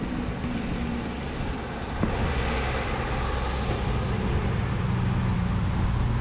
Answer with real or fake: real